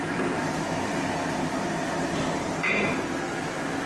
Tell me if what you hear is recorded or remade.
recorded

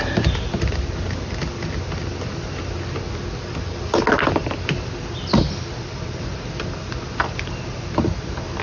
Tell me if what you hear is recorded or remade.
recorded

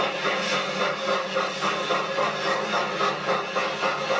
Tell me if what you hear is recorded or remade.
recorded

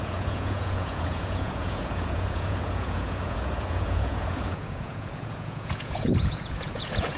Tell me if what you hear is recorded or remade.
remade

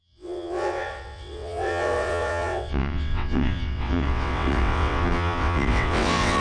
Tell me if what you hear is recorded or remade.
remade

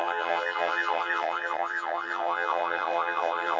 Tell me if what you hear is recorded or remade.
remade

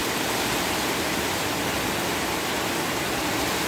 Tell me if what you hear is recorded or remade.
recorded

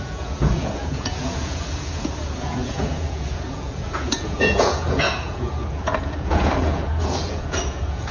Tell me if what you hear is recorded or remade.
remade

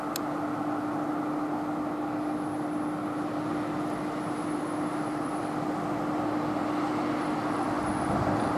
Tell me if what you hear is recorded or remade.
recorded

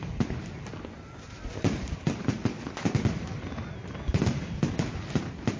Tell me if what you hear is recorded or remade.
recorded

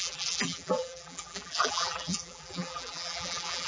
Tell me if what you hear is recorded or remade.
remade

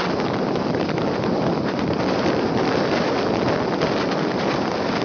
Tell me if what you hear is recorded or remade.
remade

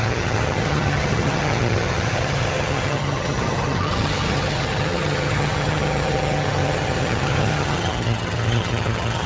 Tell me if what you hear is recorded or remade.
remade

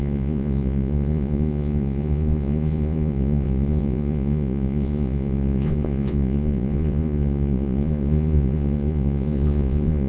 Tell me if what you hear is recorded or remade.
remade